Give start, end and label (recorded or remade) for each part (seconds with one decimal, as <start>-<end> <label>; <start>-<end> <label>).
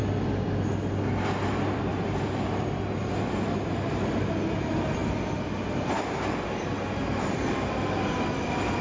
0.0-8.8 recorded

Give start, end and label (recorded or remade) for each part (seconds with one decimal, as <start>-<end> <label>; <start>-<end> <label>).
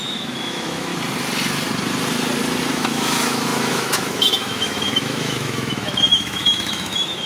0.0-0.9 remade; 0.9-2.7 recorded; 2.7-7.3 remade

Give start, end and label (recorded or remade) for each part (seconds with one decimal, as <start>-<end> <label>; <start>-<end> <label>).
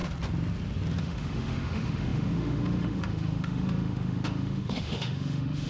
0.0-1.0 recorded; 1.0-5.7 remade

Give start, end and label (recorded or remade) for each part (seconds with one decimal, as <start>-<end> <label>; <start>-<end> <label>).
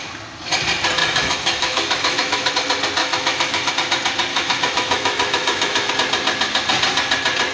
0.0-1.0 recorded; 1.0-2.5 remade; 2.5-3.0 recorded; 3.0-3.7 remade; 3.7-4.3 recorded; 4.3-5.9 remade; 5.9-7.5 recorded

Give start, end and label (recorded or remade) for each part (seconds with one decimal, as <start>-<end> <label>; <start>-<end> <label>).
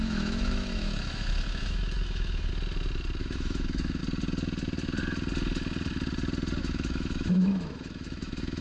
0.0-2.5 remade; 2.5-3.2 recorded; 3.2-4.0 remade; 4.0-6.6 recorded; 6.6-8.6 remade